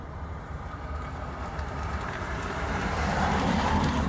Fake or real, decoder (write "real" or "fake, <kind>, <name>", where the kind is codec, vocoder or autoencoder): fake, vocoder, BigVGAN v2